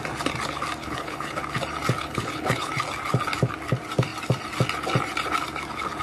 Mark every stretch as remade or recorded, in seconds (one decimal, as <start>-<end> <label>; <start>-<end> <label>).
0.0-0.8 recorded; 0.8-1.4 remade; 1.4-2.0 recorded; 2.0-2.7 remade; 2.7-6.0 recorded